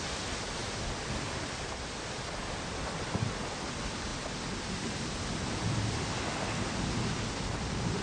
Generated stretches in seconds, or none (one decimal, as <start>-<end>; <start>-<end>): none